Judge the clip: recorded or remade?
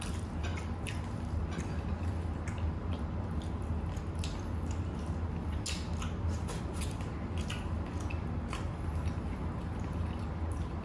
recorded